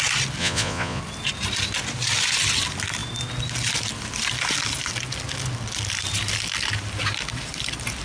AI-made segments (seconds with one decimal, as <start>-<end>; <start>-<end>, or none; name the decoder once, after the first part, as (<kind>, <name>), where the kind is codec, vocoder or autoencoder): 0.4-1.0 (vocoder, Vocos)